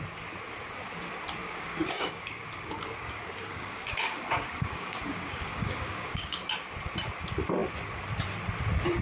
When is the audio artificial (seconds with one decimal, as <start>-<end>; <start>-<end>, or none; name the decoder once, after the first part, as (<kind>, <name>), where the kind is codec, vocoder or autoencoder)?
1.4-6.5 (codec, DAC)